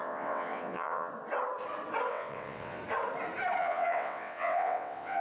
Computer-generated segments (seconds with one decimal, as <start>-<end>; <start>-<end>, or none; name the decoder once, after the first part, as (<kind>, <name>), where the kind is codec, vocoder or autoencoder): 0.0-1.1 (vocoder, WaveNeXt); 2.1-2.8; 3.6-5.2